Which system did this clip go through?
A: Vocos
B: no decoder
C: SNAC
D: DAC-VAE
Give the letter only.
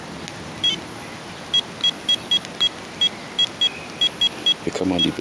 B